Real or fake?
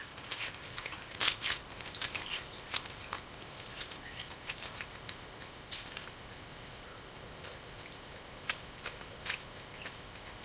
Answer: fake